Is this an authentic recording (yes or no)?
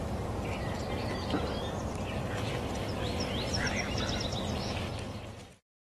yes